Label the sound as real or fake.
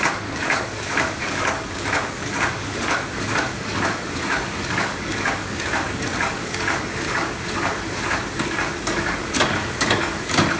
fake